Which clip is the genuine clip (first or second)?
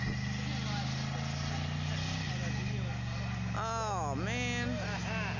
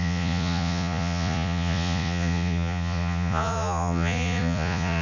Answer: first